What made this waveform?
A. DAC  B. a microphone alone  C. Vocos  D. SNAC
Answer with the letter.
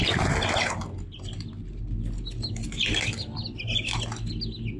B